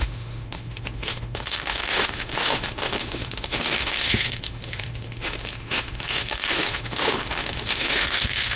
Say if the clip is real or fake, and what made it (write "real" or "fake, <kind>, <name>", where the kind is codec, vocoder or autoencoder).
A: fake, autoencoder, DAC-VAE